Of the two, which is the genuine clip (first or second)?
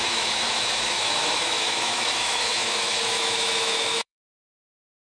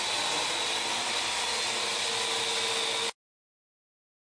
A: second